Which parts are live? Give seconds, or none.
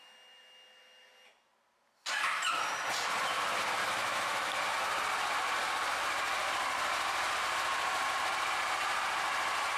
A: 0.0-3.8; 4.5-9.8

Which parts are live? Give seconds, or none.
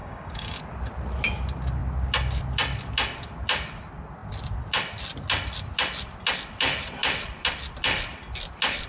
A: 0.6-8.9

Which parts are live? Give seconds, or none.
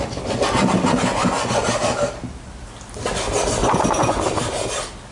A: 0.0-1.1; 1.6-3.6; 4.2-5.1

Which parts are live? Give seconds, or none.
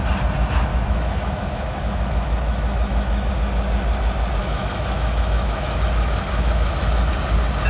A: 0.0-0.7; 3.3-4.4; 7.1-7.7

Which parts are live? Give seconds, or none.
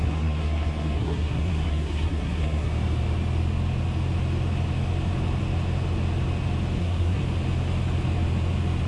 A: 2.7-6.8; 7.2-8.9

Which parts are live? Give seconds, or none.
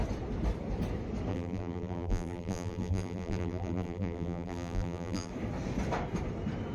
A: 0.0-1.3; 5.3-6.7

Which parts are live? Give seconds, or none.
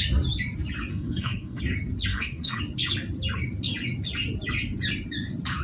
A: 0.0-0.9; 1.6-2.1; 2.6-5.6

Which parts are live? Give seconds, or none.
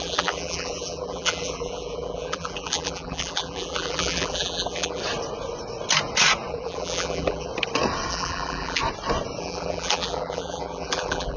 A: 5.0-6.5; 7.5-8.1; 8.8-9.4